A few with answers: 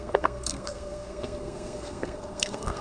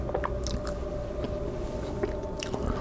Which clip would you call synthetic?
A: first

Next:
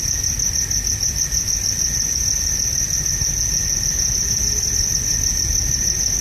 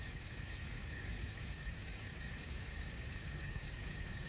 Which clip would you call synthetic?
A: second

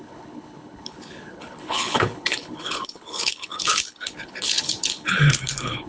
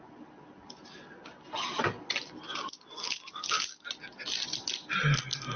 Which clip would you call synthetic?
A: first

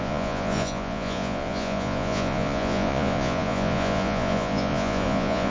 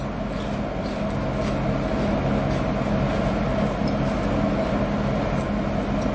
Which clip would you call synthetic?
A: first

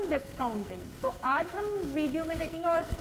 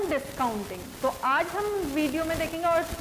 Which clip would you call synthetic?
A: first